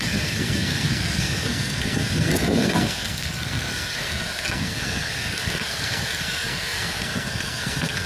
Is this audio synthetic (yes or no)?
yes